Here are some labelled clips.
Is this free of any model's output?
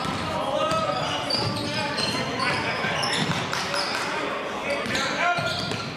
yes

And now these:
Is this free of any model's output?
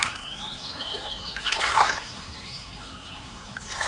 no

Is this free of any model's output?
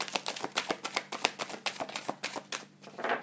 yes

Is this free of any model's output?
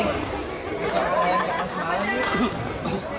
yes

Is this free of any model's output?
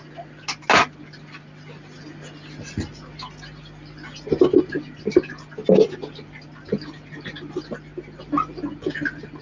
yes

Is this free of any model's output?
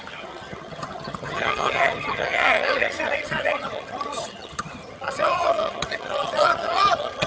no